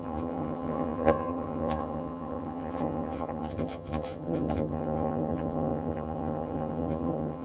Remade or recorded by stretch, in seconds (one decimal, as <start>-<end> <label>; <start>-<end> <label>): 0.0-7.4 remade